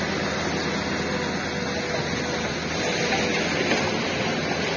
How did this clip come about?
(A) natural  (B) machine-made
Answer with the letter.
A